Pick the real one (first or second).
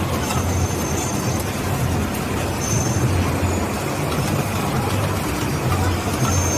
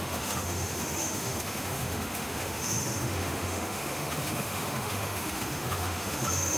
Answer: first